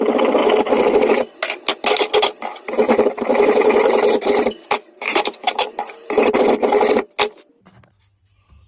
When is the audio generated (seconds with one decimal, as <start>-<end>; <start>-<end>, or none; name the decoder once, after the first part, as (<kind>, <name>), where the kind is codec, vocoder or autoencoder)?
2.5-6.3 (vocoder, BigVGAN v2)